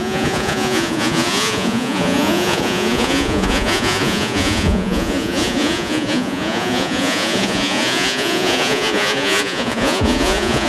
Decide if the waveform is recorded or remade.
remade